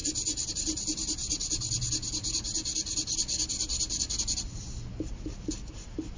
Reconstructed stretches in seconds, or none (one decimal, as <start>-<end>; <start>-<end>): 0.5-1.2; 4.9-6.2